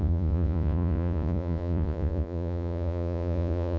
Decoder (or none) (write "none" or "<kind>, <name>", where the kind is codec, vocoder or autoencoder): vocoder, Vocos